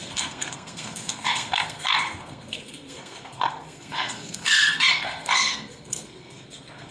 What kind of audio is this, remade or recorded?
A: remade